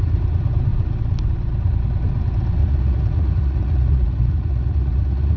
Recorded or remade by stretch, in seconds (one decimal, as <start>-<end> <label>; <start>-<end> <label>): 0.0-2.6 recorded; 2.6-5.4 remade